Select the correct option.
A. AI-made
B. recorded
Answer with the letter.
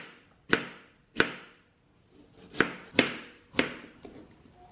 B